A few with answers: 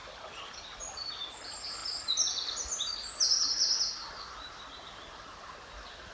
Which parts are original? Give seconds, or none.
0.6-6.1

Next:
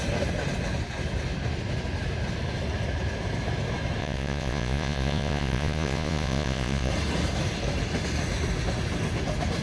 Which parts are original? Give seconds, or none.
0.0-4.0; 6.9-9.6

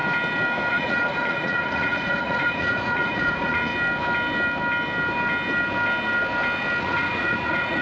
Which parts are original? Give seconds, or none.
0.0-0.7; 3.7-6.8

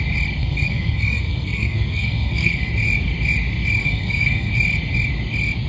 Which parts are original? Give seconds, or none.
0.0-0.4; 2.7-3.8; 4.5-5.7